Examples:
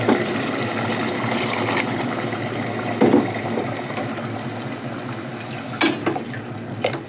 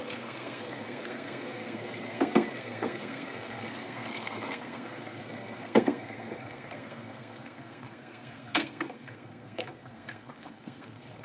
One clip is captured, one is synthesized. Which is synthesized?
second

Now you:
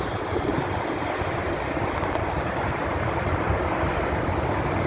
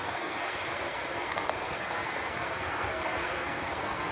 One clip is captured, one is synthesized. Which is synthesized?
second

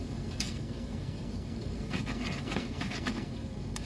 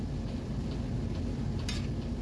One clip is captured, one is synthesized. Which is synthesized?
first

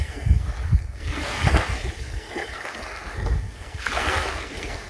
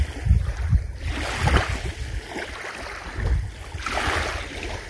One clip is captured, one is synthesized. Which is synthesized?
first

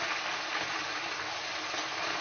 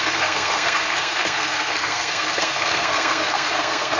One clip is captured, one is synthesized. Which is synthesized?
second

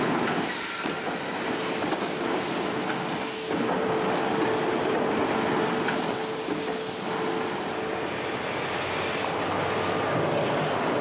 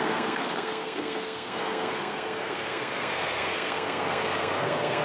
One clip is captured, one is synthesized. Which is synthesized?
second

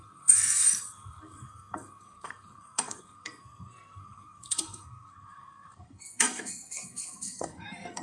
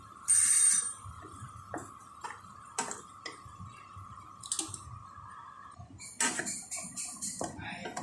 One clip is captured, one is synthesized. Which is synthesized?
first